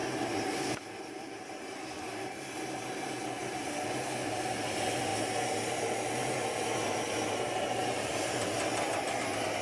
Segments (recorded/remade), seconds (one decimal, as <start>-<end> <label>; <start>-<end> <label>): 0.0-9.6 recorded